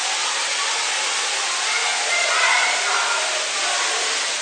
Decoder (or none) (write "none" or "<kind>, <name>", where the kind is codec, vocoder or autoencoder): none